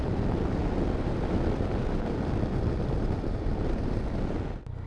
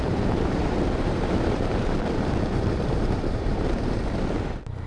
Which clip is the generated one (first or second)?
second